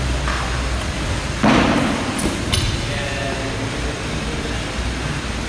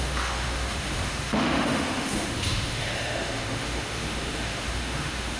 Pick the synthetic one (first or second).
second